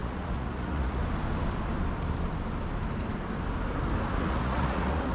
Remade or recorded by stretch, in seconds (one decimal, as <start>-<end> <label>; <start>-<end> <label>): 0.0-1.0 remade; 1.0-4.1 recorded; 4.1-5.1 remade